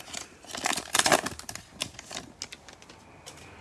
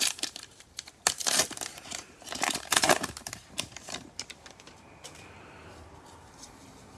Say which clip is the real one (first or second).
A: first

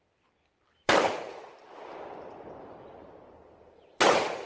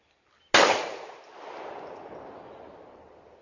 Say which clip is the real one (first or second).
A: second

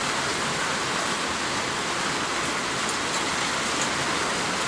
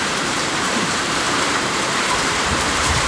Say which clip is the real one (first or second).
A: first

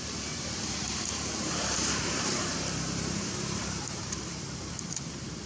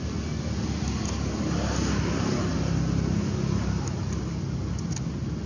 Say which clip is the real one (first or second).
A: second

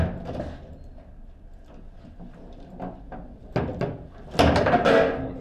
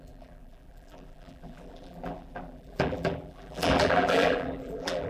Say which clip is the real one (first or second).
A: first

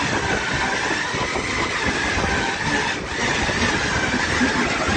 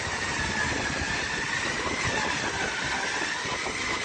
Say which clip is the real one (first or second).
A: first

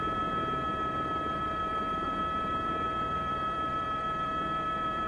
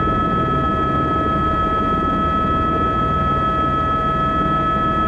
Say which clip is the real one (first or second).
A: second